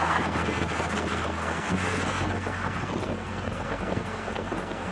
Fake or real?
fake